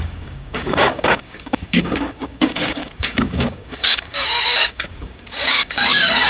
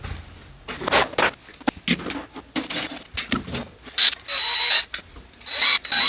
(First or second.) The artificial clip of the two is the first